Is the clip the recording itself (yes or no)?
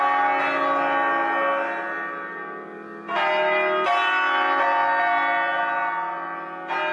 yes